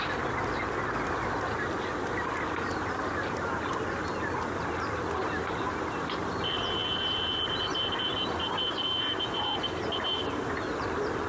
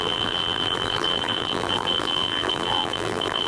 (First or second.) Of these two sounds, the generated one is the second